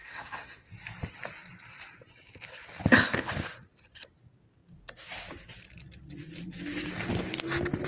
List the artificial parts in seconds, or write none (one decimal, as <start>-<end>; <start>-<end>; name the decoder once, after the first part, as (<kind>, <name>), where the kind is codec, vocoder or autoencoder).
0.0-0.7 (codec, SNAC)